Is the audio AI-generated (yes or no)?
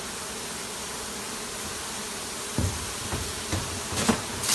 no